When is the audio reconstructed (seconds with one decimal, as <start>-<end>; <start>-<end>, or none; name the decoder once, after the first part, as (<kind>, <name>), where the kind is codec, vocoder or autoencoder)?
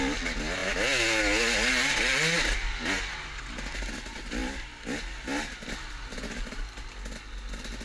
none